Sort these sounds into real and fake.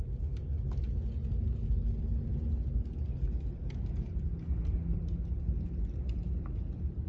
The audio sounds real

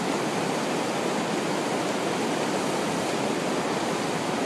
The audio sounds real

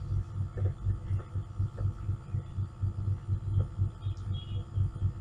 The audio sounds real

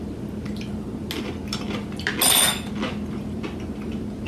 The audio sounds real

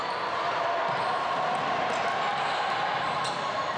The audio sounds fake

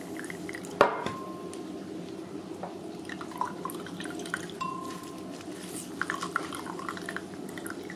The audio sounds real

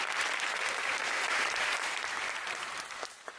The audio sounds fake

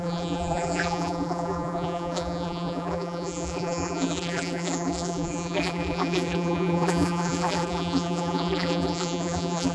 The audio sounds fake